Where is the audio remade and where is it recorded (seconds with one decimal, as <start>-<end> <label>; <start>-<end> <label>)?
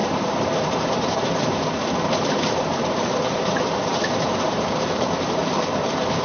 0.0-5.4 remade; 5.4-6.2 recorded